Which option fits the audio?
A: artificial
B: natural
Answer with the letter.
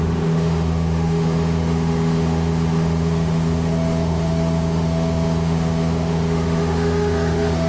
A